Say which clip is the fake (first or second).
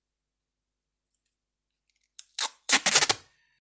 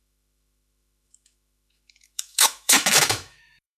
second